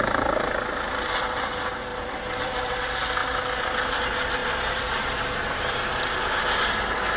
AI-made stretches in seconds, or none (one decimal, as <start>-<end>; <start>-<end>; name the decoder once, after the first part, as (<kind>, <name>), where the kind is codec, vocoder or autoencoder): 1.9-2.8 (vocoder, BigVGAN v2); 4.4-5.8